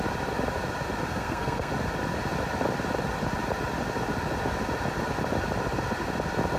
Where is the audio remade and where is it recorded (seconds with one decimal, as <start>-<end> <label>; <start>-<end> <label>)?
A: 0.0-1.1 recorded; 1.1-1.7 remade; 1.7-6.6 recorded